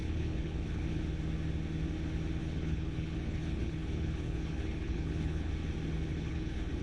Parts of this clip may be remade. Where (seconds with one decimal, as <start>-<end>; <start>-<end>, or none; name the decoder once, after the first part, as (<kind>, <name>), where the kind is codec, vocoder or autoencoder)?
0.0-1.0 (codec, HILCodec); 2.4-5.5; 6.1-6.8